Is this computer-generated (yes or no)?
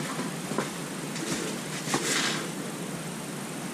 no